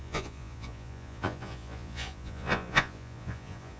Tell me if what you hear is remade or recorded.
remade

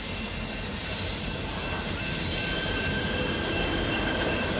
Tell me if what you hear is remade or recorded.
remade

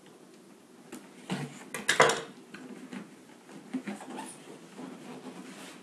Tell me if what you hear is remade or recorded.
recorded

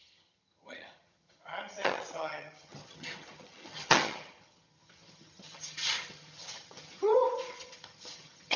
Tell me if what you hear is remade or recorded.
remade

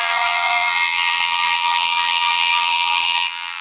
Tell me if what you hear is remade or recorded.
remade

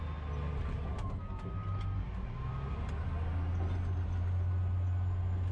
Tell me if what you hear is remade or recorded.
recorded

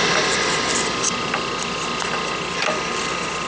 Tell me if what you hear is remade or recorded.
recorded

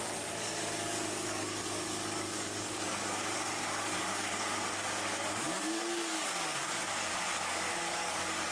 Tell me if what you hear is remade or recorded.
remade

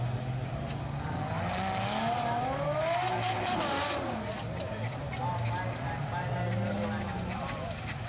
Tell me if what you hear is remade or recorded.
recorded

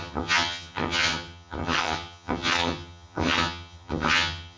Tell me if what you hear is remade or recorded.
remade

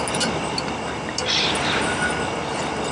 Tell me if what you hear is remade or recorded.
recorded